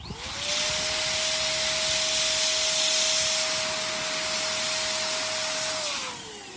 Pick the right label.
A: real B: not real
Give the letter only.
A